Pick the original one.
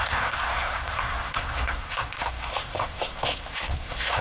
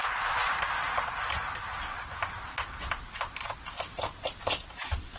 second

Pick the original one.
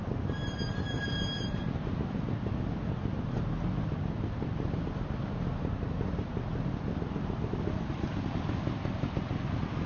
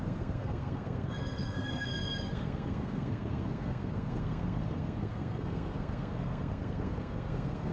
first